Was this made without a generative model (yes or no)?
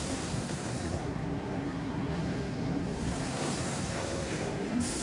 no